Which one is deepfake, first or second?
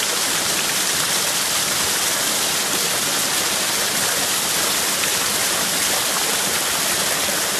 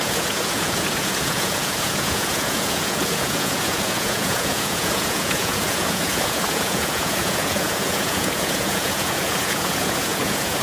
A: second